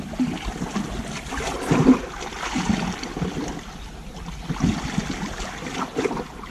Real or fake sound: real